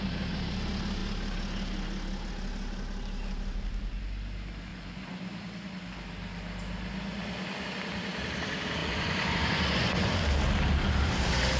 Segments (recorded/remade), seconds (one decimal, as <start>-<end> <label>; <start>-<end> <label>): 0.0-4.7 recorded; 4.7-5.3 remade; 5.3-8.8 recorded; 8.8-10.1 remade; 10.1-11.6 recorded